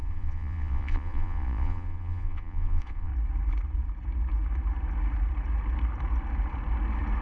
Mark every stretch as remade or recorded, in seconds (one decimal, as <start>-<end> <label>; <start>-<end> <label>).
0.0-3.1 remade; 3.1-7.2 recorded